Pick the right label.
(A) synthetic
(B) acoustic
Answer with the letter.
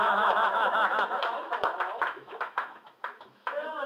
A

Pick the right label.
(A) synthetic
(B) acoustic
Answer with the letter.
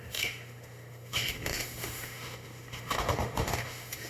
A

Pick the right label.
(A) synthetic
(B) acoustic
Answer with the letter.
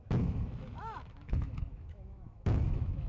A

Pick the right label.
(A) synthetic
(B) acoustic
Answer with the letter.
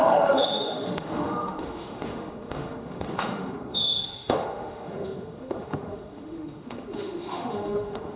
A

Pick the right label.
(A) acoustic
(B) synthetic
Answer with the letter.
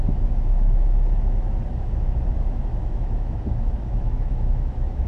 B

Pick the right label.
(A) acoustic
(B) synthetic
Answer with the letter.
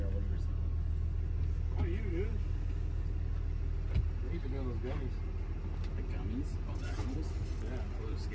A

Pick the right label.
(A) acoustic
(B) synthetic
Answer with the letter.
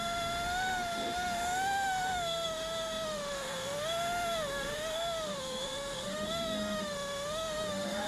B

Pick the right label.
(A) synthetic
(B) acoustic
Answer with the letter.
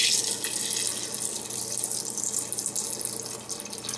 B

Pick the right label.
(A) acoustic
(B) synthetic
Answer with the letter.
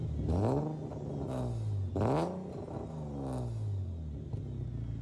A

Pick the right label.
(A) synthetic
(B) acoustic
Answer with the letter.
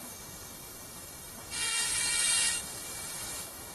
A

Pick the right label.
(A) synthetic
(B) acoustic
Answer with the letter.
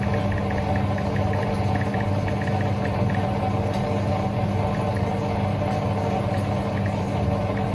B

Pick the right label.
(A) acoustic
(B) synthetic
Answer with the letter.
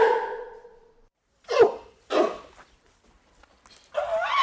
A